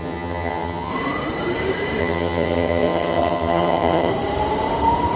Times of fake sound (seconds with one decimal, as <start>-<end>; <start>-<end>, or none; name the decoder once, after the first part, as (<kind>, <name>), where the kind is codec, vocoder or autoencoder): 0.0-0.9 (vocoder, HiFi-GAN); 2.0-4.1